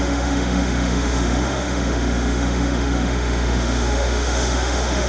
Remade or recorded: remade